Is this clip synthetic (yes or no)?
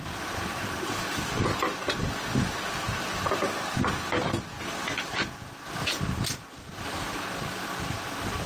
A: no